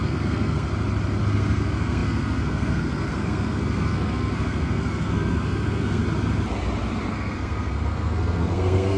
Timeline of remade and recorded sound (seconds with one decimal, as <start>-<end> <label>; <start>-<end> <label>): 0.0-0.7 remade; 0.7-1.2 recorded; 1.2-6.0 remade; 6.0-7.1 recorded; 7.1-9.0 remade